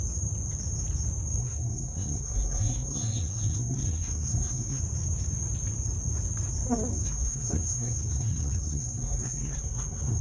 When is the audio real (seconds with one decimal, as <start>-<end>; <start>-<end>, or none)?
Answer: 0.0-1.4; 4.8-6.9